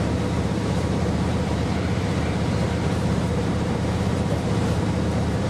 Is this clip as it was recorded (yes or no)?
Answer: no